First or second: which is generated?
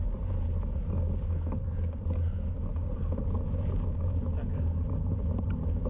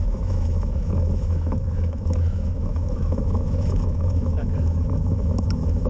second